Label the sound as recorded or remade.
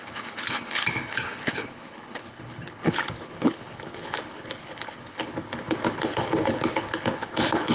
remade